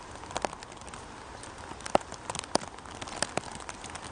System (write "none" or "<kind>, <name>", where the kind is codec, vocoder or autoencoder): none